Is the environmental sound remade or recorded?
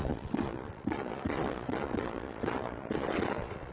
remade